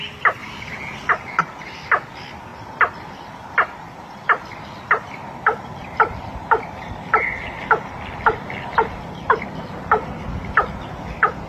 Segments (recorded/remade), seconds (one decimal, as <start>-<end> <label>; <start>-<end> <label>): 0.0-11.5 recorded